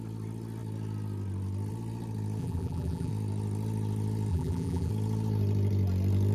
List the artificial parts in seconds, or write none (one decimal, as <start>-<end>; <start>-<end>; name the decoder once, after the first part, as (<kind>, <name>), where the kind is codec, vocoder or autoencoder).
2.4-3.1 (vocoder, BigVGAN v2); 4.3-4.9